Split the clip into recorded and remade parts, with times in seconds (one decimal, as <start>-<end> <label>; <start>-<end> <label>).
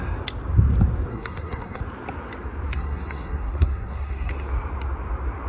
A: 0.0-1.1 recorded; 1.1-1.8 remade; 1.8-2.7 recorded; 2.7-4.3 remade; 4.3-5.5 recorded